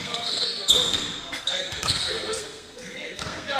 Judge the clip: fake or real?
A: fake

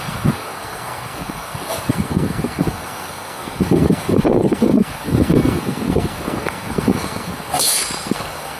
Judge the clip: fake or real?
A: fake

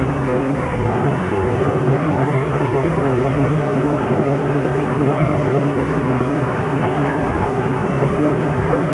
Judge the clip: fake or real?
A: fake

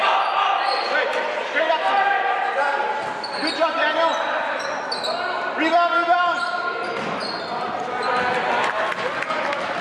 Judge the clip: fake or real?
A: real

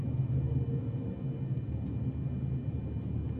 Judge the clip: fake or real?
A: real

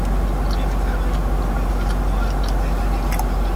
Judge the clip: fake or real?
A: real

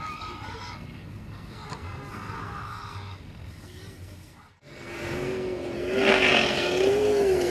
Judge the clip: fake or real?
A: fake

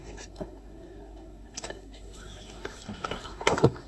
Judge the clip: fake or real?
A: fake